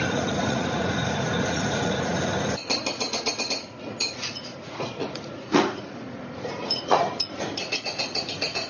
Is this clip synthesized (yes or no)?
yes